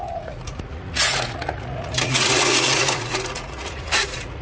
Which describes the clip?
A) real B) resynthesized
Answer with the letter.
B